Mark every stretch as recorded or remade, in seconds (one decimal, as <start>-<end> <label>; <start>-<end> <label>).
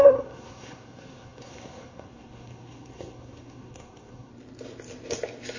0.0-4.3 remade; 4.3-5.6 recorded